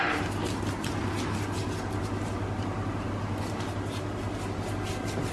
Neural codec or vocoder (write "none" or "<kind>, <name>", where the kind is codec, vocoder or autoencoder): none